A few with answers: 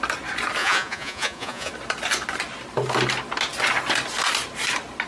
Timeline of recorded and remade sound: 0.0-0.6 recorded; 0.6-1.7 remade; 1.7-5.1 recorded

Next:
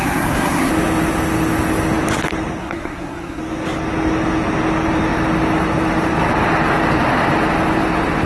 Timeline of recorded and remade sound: 0.0-0.7 remade; 0.7-2.6 recorded; 2.6-3.4 remade; 3.4-8.3 recorded

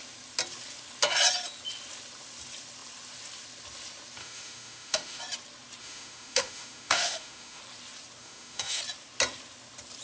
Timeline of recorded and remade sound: 0.0-4.2 recorded; 4.2-5.2 remade; 5.2-5.8 recorded; 5.8-7.6 remade; 7.6-8.2 recorded; 8.2-8.8 remade; 8.8-10.0 recorded

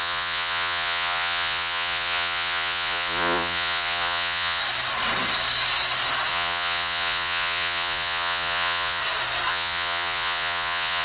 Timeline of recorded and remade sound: 0.0-4.6 remade; 4.6-6.3 recorded; 6.3-9.0 remade; 9.0-9.5 recorded; 9.5-11.0 remade

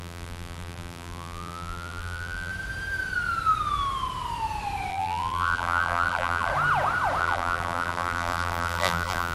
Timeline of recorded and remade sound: 0.0-2.5 remade; 2.5-4.9 recorded; 4.9-6.5 remade; 6.5-7.2 recorded; 7.2-9.3 remade

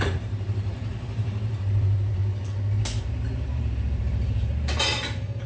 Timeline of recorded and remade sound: 0.0-2.2 remade; 2.2-3.0 recorded; 3.0-5.5 remade